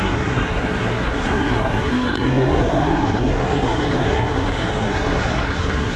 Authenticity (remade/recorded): remade